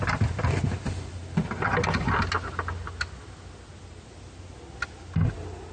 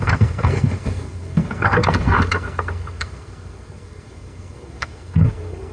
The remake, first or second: second